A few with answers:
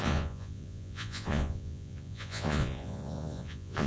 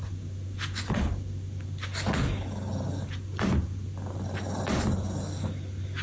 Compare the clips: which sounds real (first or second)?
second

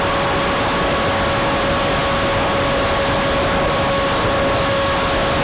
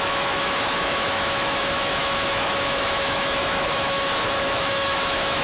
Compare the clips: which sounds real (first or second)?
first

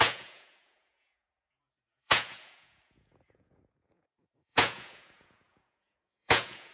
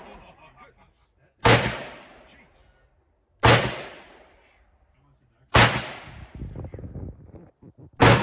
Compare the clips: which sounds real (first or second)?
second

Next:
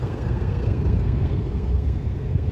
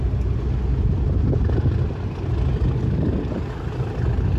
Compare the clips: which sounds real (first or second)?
second